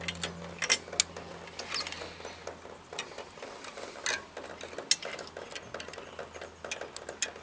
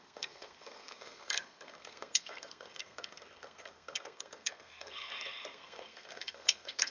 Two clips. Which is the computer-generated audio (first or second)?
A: second